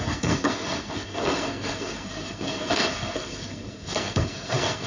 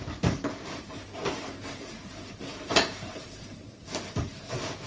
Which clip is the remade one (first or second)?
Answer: first